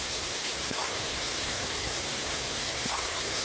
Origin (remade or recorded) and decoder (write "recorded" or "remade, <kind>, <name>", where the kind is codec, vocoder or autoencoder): remade, codec, SNAC